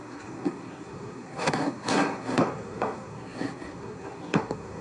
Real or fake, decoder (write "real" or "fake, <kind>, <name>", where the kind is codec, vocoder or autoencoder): fake, codec, SNAC